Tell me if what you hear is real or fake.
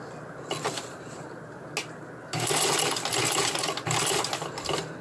real